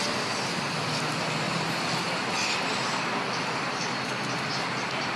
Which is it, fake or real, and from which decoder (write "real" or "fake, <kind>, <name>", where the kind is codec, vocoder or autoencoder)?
real